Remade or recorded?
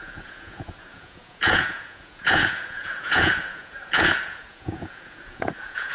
remade